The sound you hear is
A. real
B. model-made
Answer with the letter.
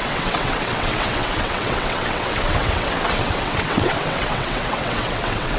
B